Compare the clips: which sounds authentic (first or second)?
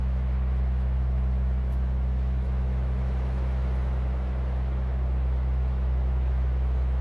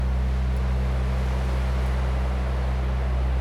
second